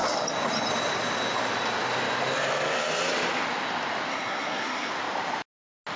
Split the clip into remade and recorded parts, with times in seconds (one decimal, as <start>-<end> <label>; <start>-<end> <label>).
0.0-4.1 recorded; 4.1-4.9 remade; 4.9-6.0 recorded